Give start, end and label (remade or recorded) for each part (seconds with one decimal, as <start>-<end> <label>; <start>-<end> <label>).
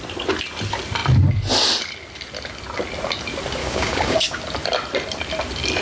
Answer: 0.0-3.6 recorded; 3.6-4.4 remade; 4.4-5.8 recorded